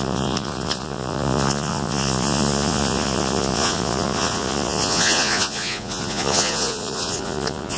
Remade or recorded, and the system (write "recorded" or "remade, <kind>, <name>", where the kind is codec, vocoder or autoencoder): remade, vocoder, Vocos